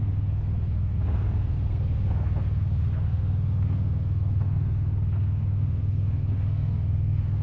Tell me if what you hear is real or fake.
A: fake